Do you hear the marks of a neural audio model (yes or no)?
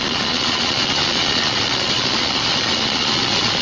yes